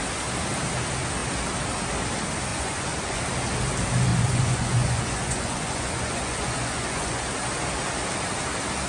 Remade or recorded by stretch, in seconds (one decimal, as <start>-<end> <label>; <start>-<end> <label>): 0.0-2.5 recorded; 2.5-3.2 remade; 3.2-4.1 recorded; 4.1-7.2 remade; 7.2-8.9 recorded